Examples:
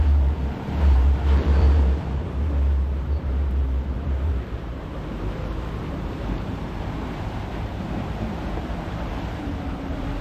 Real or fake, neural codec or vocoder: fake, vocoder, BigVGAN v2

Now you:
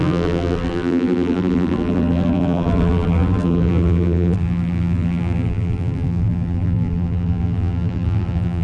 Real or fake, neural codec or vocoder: fake, vocoder, BigVGAN v2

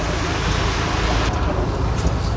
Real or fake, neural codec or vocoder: real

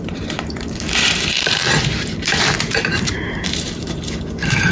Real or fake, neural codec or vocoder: fake, vocoder, BigVGAN v2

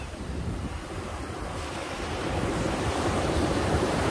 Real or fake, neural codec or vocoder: fake, vocoder, BigVGAN v2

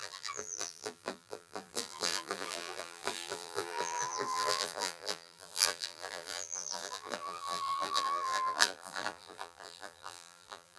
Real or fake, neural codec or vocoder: fake, vocoder, BigVGAN v2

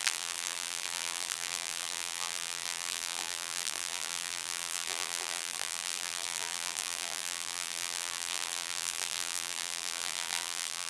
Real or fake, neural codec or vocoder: fake, vocoder, BigVGAN v2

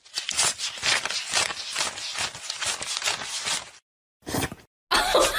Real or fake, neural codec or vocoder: real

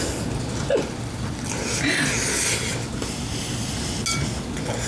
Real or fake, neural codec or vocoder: real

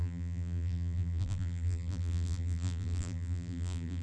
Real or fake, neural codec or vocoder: fake, vocoder, BigVGAN v2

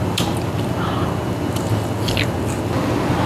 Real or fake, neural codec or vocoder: real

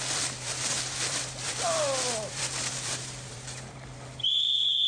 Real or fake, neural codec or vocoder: fake, vocoder, BigVGAN v2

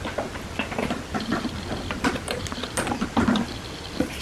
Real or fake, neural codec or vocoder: fake, vocoder, BigVGAN v2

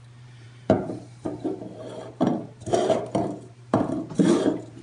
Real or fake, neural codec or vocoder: fake, vocoder, BigVGAN v2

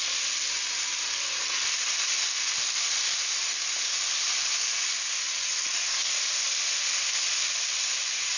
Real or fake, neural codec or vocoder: real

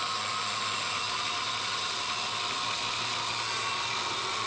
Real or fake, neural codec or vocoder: real